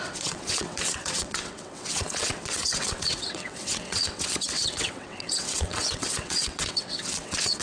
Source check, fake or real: fake